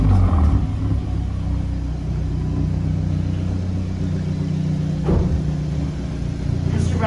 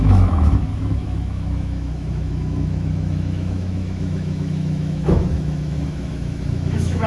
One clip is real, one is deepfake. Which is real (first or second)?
first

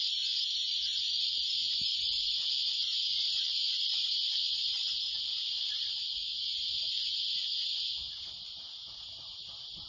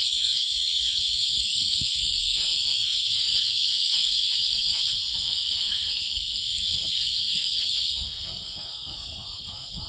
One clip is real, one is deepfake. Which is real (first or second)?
first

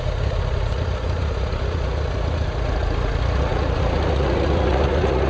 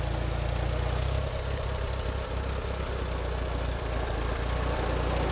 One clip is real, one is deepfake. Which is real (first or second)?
second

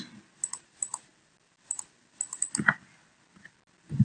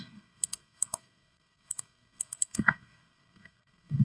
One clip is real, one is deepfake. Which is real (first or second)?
first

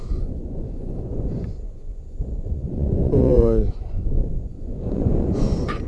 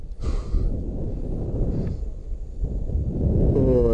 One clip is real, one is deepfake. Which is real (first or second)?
second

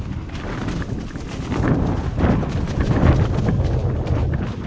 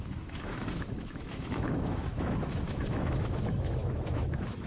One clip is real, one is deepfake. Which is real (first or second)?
first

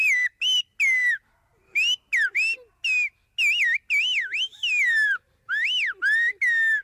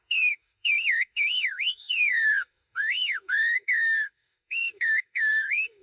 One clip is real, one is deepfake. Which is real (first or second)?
first